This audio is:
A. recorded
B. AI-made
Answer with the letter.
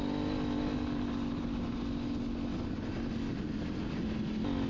A